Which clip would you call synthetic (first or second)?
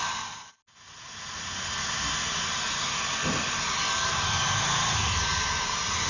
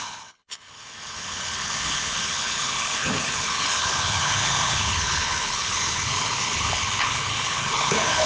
second